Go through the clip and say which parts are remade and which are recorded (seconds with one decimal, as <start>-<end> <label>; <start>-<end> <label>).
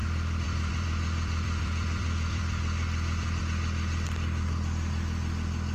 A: 0.0-3.4 remade; 3.4-5.7 recorded